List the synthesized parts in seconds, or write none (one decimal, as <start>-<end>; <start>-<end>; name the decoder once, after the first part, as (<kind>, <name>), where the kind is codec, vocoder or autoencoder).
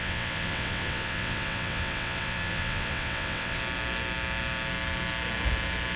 0.0-3.6 (vocoder, WaveNeXt)